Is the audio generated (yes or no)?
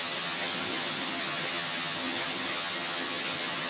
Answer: yes